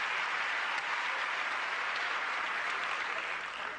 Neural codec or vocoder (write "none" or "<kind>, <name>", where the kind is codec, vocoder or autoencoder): none